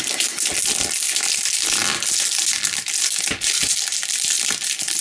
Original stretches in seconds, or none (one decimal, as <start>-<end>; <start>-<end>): 0.0-5.0